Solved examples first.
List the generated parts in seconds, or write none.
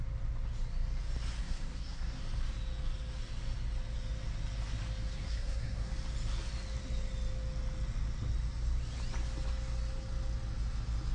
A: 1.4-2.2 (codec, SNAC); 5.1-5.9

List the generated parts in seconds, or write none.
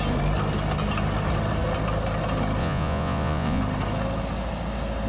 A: 2.6-3.6 (vocoder, Vocos)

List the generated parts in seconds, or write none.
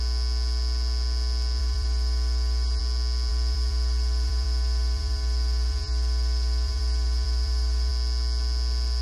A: 1.6-2.8 (vocoder, BigVGAN v2); 3.3-7.9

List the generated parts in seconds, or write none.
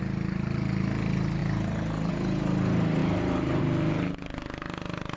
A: 1.4-2.1 (vocoder, BigVGAN v2); 3.0-3.6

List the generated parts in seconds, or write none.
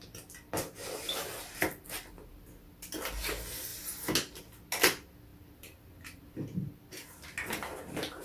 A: none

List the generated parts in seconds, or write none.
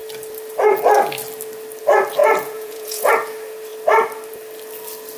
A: 2.2-3.1 (vocoder, Vocos)